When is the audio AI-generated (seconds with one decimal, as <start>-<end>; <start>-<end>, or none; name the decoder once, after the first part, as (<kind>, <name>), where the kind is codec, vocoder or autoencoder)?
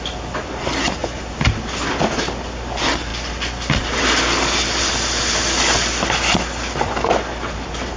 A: none